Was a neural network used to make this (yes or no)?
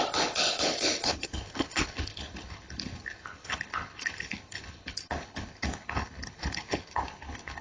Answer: yes